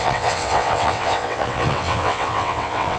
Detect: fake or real fake